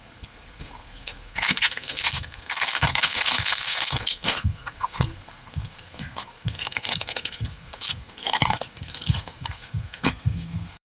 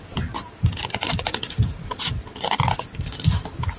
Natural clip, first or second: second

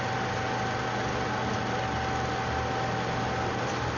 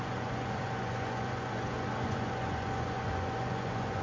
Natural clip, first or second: first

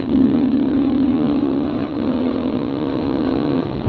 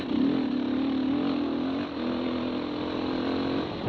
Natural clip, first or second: second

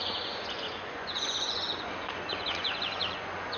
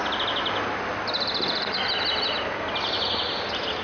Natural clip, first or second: second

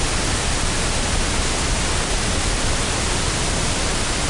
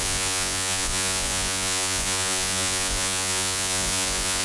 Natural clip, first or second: first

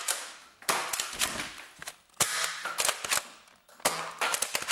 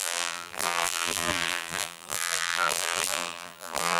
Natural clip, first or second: first